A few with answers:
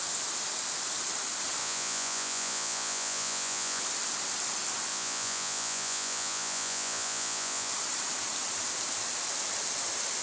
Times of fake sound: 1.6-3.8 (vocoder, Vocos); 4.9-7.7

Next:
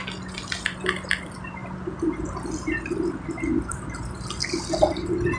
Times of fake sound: none

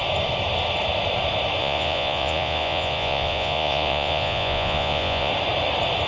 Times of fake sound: 1.6-5.3 (vocoder, Vocos)